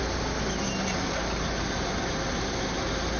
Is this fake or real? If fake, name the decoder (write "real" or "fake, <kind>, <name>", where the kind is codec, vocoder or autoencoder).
real